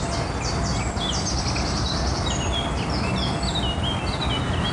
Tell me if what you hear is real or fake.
real